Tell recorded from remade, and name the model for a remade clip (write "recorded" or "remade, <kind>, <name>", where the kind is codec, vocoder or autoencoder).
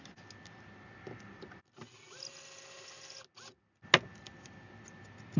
recorded